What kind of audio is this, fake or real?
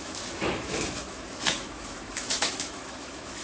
fake